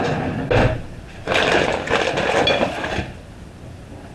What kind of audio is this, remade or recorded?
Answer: recorded